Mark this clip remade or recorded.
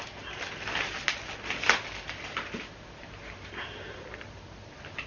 recorded